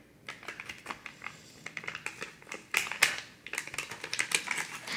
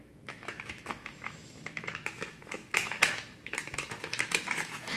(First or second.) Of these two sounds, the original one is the first